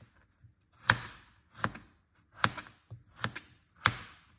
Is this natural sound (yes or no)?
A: yes